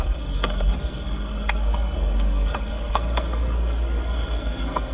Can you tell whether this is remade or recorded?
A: remade